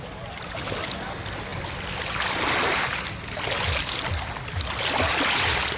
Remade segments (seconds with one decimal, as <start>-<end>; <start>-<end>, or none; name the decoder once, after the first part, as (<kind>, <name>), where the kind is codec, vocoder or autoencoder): none

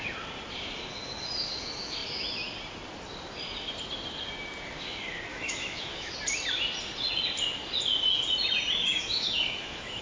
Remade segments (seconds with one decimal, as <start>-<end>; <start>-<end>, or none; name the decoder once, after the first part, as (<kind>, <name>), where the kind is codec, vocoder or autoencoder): 5.3-6.1 (autoencoder, DAC-VAE); 8.8-10.0

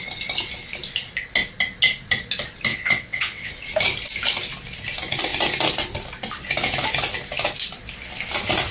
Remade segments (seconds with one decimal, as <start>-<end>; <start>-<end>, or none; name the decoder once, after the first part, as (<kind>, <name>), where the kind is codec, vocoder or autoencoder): 2.7-3.5 (vocoder, WaveNeXt)

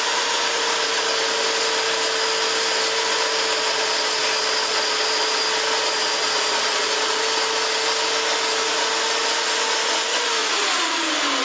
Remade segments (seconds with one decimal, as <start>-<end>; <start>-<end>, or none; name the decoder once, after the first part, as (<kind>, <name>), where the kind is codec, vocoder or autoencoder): 10.4-11.0 (vocoder, Vocos)

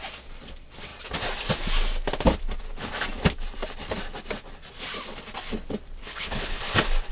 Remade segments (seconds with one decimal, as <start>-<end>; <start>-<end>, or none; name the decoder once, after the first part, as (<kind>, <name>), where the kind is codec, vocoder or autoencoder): 6.0-6.6 (codec, HILCodec)

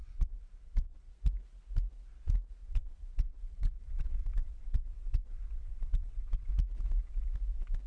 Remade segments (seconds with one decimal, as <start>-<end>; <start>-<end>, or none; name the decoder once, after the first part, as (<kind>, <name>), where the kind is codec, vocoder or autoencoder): 0.0-1.1 (vocoder, WaveNeXt); 2.6-6.5

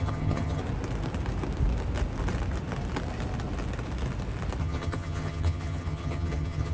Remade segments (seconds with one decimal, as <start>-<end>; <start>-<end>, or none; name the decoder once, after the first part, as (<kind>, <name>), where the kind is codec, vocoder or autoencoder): 0.0-0.6 (vocoder, HiFi-GAN); 4.6-6.7